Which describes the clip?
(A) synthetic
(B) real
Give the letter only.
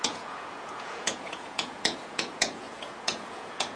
A